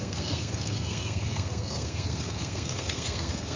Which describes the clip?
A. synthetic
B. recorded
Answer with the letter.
A